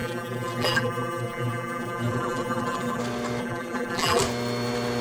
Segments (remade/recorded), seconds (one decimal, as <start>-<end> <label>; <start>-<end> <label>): 0.0-3.0 remade; 3.0-3.4 recorded; 3.4-4.2 remade; 4.2-5.0 recorded

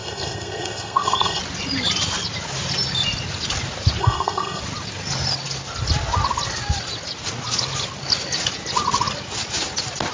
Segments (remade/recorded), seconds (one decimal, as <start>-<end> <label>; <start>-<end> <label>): 0.0-1.4 remade; 1.4-4.0 recorded; 4.0-4.6 remade; 4.6-10.1 recorded

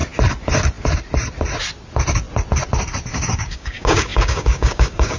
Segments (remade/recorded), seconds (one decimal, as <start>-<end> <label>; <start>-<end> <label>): 0.0-3.1 recorded; 3.1-5.2 remade

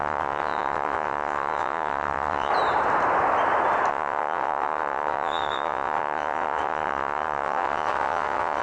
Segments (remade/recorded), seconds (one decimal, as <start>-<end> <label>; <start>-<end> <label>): 0.0-2.5 remade; 2.5-3.9 recorded; 3.9-8.6 remade

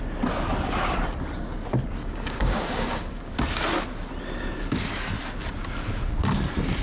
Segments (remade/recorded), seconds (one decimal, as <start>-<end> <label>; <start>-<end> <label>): 0.0-2.0 recorded; 2.0-3.3 remade; 3.3-6.8 recorded

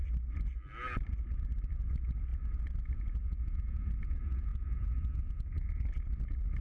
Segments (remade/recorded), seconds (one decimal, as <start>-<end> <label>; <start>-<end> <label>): 0.0-1.9 recorded; 1.9-6.6 remade

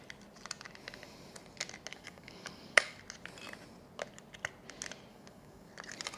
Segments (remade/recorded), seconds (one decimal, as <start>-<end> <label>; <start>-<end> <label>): 0.0-1.9 recorded; 1.9-3.0 remade; 3.0-5.1 recorded; 5.1-5.7 remade; 5.7-6.2 recorded

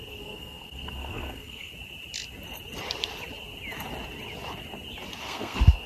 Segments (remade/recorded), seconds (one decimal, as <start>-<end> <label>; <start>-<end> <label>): 0.0-1.7 remade; 1.7-5.2 recorded; 5.2-5.9 remade